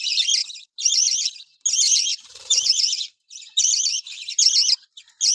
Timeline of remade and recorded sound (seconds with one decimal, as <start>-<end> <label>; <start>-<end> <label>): 0.0-2.1 recorded; 2.1-3.2 remade; 3.2-3.6 recorded; 3.6-4.2 remade; 4.2-5.3 recorded